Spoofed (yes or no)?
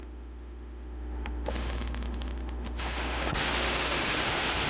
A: yes